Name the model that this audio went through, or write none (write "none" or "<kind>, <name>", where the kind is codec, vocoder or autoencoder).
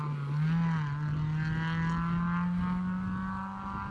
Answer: none